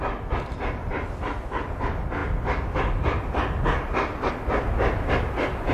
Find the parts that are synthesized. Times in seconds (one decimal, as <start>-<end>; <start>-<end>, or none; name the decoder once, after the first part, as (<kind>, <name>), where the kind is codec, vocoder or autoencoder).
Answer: none